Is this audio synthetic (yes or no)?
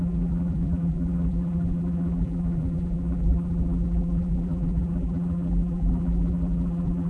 yes